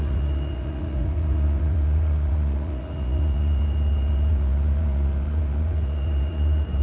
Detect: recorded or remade remade